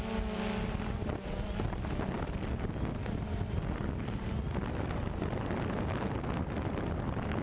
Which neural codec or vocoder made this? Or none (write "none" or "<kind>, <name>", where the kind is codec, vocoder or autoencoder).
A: none